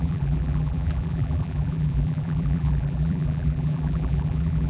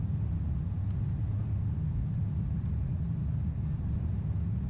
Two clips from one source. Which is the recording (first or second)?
second